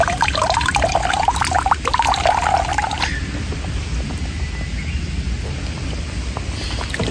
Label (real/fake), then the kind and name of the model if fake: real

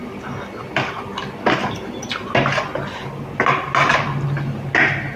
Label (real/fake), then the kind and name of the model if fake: real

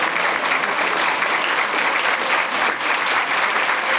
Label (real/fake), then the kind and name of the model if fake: real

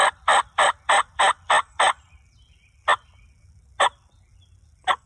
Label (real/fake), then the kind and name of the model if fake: real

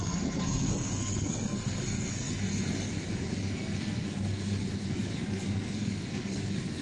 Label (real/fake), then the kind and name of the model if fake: fake, codec, SNAC